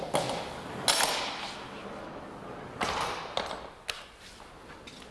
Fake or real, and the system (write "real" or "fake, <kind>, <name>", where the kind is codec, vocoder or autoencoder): real